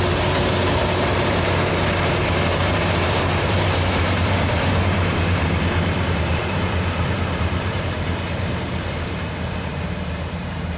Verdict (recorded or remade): remade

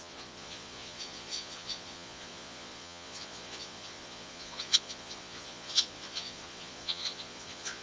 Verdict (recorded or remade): remade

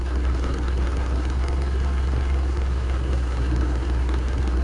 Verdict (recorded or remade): remade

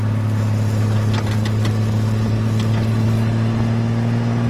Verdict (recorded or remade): recorded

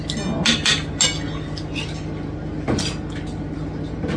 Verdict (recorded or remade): recorded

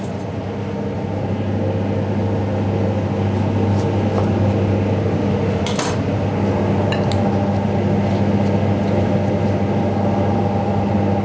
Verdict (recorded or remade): recorded